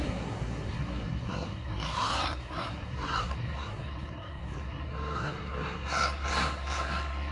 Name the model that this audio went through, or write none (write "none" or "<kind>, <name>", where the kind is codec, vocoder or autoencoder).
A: codec, SNAC